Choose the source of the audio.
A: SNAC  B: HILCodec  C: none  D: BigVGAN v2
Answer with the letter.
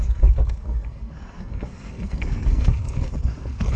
A